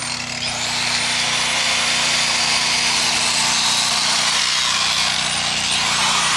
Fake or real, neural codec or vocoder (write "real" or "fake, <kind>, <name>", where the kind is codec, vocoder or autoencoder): real